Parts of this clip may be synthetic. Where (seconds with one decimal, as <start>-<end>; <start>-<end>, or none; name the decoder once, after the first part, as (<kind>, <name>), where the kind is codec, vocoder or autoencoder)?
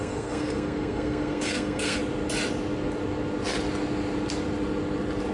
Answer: 0.0-2.0 (codec, SNAC)